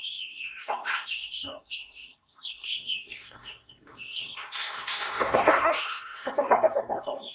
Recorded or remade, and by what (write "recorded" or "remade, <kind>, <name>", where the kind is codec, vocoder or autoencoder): remade, codec, SNAC